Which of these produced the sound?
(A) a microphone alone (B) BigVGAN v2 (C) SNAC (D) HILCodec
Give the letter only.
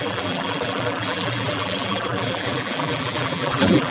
B